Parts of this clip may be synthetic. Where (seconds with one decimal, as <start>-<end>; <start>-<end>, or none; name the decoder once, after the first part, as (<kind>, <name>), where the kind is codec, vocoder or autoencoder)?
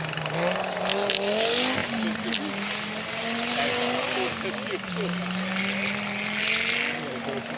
none